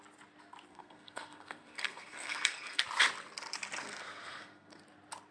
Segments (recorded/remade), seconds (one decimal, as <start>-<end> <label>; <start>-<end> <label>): 0.0-0.7 recorded; 0.7-2.8 remade; 2.8-3.8 recorded; 3.8-4.8 remade; 4.8-5.3 recorded